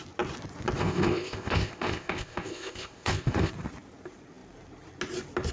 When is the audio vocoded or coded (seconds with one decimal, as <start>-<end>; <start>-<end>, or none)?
0.8-3.5